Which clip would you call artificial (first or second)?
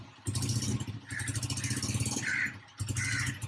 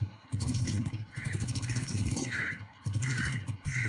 second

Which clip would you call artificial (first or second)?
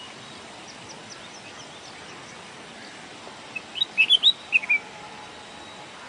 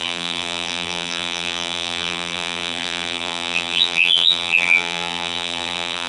second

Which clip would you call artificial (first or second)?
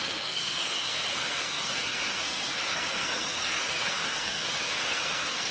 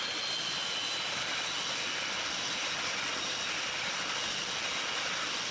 first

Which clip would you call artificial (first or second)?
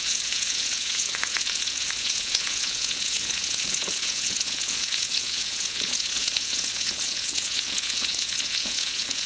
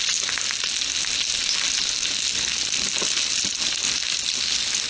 first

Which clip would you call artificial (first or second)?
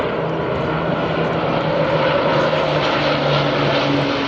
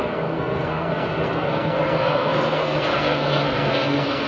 second